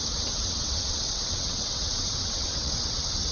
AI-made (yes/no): yes